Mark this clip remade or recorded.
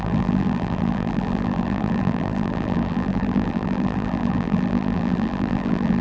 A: remade